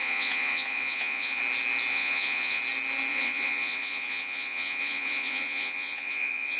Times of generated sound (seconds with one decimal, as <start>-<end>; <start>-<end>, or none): 0.0-1.4; 1.9-2.6; 3.1-6.6